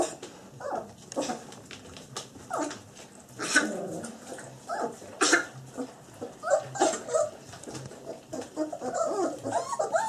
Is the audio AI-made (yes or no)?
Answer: no